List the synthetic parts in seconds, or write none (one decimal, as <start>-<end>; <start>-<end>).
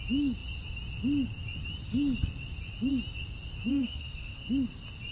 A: 3.7-4.5